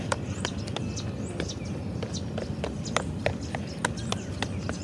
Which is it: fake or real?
real